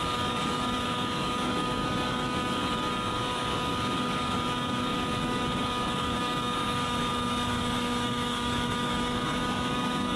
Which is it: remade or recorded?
remade